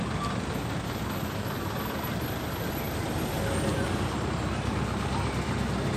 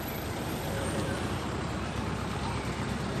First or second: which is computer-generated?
second